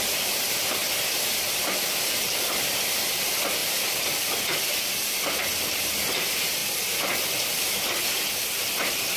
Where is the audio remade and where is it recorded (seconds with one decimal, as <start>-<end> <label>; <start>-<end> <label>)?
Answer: 0.0-0.8 remade; 0.8-1.8 recorded; 1.8-6.6 remade; 6.6-9.2 recorded